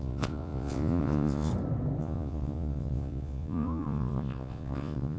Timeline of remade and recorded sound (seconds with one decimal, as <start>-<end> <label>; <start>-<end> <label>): 0.0-1.5 remade; 1.5-2.0 recorded; 2.0-5.2 remade